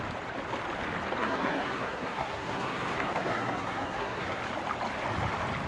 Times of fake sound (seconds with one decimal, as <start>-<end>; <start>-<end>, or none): 1.2-4.4